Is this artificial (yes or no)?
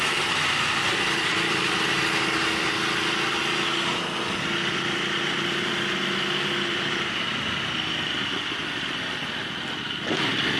no